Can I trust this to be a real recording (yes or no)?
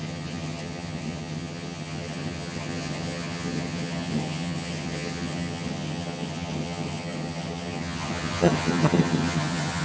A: no